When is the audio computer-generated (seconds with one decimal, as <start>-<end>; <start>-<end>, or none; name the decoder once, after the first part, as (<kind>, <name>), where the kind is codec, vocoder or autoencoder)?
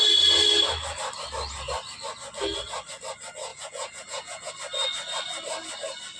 3.5-4.5 (vocoder, Vocos)